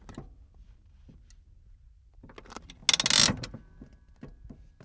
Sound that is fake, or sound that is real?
real